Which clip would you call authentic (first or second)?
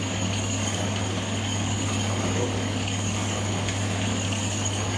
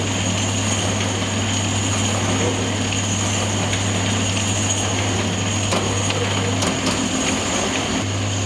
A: second